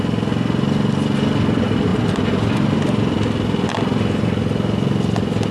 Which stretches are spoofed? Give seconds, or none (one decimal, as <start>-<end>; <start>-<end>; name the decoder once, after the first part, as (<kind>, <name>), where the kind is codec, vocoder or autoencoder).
none

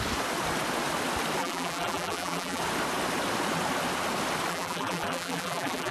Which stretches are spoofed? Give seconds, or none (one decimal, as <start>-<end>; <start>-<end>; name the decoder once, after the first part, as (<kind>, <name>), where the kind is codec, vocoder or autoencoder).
1.4-2.6 (vocoder, BigVGAN v2); 4.5-5.9

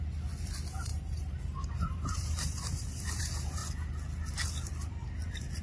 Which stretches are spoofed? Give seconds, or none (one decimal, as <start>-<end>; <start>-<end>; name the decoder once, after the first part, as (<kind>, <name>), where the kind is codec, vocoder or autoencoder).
0.9-3.2 (vocoder, BigVGAN v2)

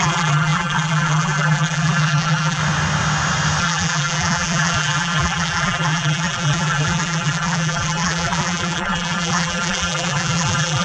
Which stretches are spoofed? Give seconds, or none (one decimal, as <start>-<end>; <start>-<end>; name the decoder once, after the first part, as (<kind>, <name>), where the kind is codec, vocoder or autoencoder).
0.0-2.6 (vocoder, BigVGAN v2); 3.6-10.8

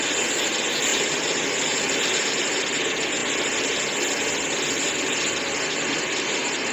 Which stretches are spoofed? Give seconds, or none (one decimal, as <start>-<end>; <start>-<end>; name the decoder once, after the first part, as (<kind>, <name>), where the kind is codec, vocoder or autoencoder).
0.9-2.6 (vocoder, BigVGAN v2)

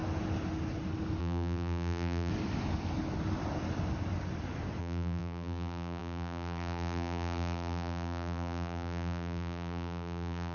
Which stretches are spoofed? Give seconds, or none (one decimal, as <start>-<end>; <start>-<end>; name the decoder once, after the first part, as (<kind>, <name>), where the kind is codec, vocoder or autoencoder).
1.2-2.3 (vocoder, BigVGAN v2); 4.8-10.5

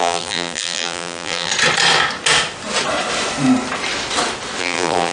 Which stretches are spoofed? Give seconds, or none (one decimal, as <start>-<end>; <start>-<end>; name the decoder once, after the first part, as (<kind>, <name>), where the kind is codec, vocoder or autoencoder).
0.0-1.5 (vocoder, BigVGAN v2); 4.6-5.1

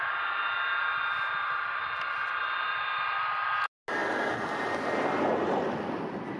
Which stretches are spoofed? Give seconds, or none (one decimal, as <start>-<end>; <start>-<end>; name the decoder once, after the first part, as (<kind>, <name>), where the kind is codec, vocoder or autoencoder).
1.1-1.8 (vocoder, BigVGAN v2); 2.2-3.3